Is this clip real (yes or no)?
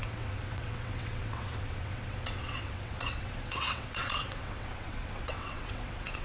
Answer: no